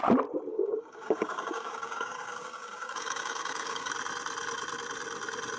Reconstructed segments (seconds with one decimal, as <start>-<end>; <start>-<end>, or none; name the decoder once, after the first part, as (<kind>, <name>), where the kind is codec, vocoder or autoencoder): 0.5-3.9 (codec, DAC)